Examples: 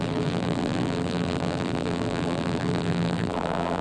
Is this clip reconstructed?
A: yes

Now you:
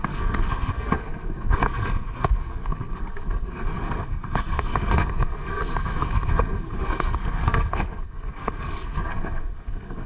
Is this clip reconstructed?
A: yes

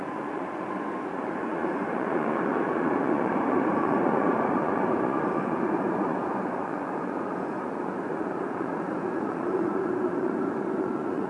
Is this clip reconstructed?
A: yes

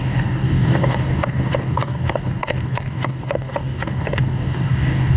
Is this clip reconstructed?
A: yes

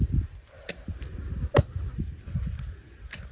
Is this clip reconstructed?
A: no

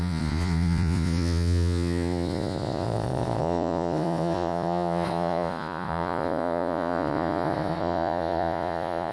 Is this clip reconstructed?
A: yes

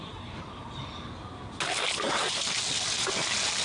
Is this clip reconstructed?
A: no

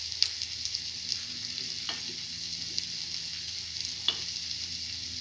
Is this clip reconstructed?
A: no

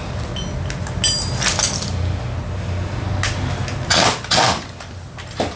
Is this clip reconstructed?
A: no